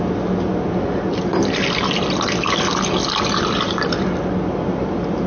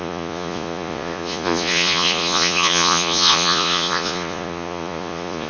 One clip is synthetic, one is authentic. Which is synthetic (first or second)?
second